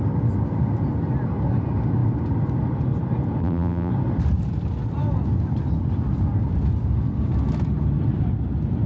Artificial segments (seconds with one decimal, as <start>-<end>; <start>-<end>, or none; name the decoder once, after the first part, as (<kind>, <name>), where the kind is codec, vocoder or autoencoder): 3.4-3.9 (vocoder, BigVGAN v2)